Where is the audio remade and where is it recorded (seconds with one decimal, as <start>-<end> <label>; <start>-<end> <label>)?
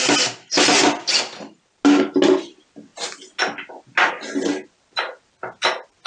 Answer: 0.0-6.1 recorded